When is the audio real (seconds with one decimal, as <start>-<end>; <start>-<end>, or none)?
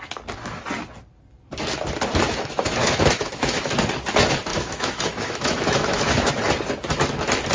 0.0-2.3; 3.7-4.5; 6.3-7.5